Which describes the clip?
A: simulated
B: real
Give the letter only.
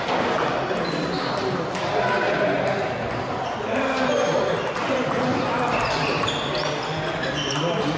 B